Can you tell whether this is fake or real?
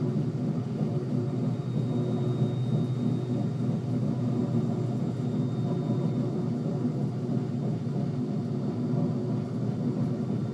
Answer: real